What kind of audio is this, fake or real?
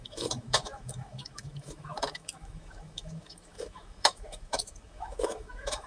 fake